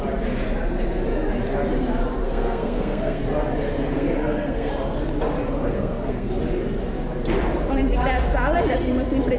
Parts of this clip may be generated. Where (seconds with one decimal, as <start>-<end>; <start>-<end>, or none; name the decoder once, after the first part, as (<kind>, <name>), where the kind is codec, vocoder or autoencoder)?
2.2-3.2 (codec, SNAC); 3.9-4.7; 5.6-6.3